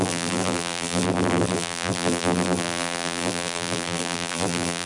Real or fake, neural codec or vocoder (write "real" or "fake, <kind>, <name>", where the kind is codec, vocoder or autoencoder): fake, vocoder, BigVGAN v2